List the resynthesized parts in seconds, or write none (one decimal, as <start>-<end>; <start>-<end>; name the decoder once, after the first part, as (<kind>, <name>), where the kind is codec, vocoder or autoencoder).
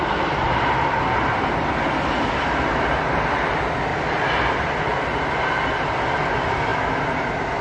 none